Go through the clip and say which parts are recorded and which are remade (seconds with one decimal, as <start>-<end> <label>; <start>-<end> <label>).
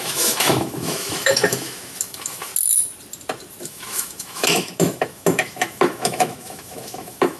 0.0-2.5 remade; 2.5-3.6 recorded; 3.6-7.4 remade